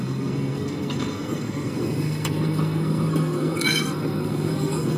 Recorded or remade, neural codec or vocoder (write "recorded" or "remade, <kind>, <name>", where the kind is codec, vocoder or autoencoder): remade, codec, SNAC